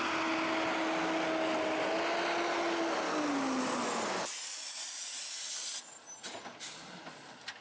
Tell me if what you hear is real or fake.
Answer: real